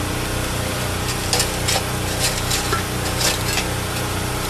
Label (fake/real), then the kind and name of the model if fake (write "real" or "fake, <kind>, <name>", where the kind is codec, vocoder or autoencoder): real